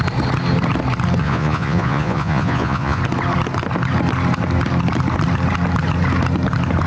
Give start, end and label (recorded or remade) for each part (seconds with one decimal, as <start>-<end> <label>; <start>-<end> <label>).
0.0-1.2 recorded; 1.2-3.0 remade; 3.0-6.9 recorded